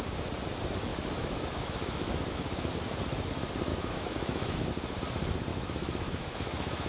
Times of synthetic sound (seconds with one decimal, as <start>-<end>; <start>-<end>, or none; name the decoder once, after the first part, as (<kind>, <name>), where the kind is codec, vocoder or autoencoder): 0.9-2.7 (autoencoder, DAC-VAE); 3.7-4.7; 5.5-6.9